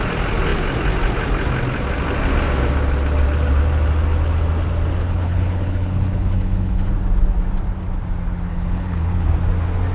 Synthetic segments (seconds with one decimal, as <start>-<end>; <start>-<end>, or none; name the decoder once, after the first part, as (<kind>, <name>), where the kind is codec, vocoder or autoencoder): 5.0-6.9 (codec, HILCodec); 8.5-9.3